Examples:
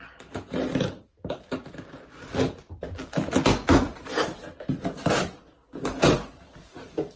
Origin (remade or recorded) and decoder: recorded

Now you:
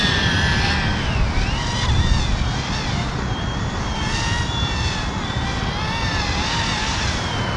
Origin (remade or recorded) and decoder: remade, vocoder, BigVGAN v2